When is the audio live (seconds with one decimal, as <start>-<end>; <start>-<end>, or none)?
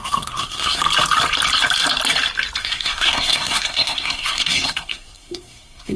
0.8-2.6